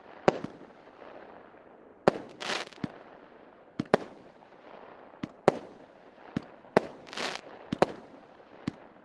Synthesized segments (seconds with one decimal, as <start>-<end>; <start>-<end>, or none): 0.0-1.9; 3.5-4.9; 7.4-9.0